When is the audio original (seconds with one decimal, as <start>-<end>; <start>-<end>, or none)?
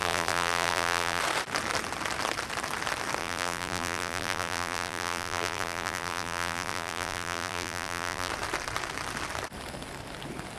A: 1.2-3.2; 8.3-10.6